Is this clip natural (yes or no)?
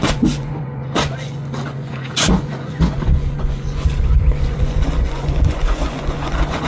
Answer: no